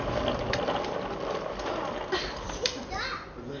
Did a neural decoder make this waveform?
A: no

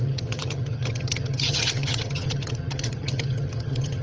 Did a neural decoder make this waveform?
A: yes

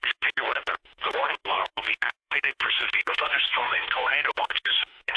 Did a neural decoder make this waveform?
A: yes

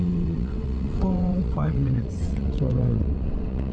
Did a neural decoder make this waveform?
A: yes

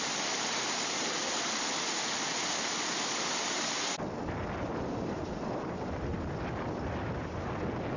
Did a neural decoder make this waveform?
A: no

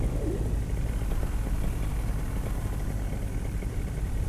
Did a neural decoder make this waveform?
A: no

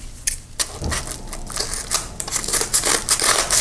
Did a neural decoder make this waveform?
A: no